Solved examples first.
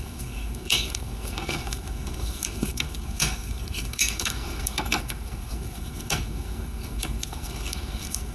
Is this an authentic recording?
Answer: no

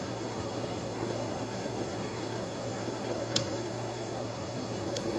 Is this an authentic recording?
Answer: no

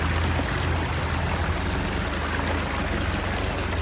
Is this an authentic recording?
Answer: yes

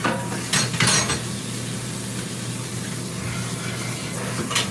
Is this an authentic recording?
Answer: yes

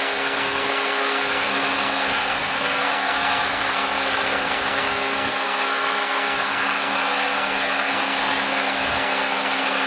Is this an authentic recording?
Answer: no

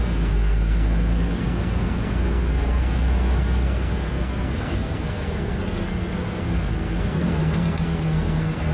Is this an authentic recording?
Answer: no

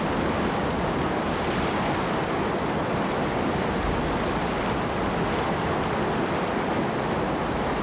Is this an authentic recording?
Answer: yes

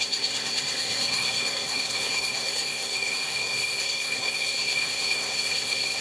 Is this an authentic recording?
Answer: no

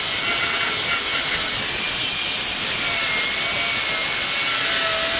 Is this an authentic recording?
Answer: yes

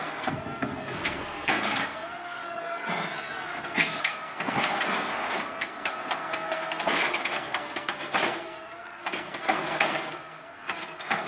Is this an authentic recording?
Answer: no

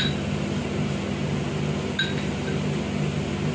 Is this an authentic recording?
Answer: yes